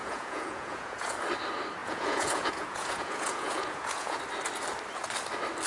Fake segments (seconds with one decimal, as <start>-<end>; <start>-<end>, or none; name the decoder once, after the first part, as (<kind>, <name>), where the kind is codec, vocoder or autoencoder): 0.0-1.1 (vocoder, Vocos); 1.8-4.2